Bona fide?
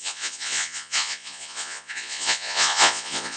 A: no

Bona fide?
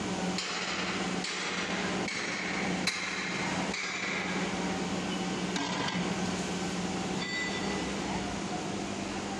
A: yes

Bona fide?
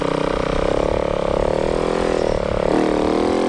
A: yes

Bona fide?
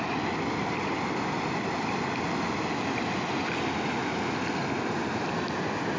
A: yes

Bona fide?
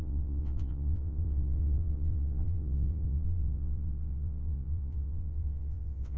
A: no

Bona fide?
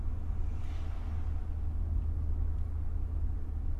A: yes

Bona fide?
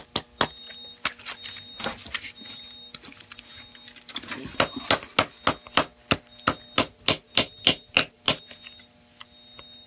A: yes